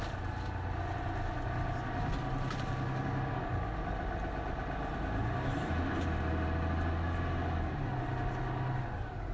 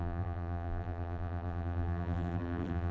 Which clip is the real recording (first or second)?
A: first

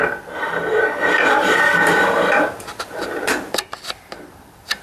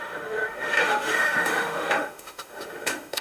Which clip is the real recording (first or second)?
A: first